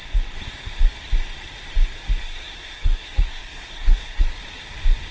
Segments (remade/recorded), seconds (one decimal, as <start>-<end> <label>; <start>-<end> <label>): 0.0-2.2 recorded; 2.2-4.4 remade; 4.4-5.1 recorded